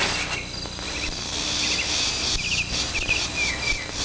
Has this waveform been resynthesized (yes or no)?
no